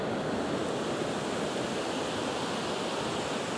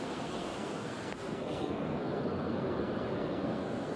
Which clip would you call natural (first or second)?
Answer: first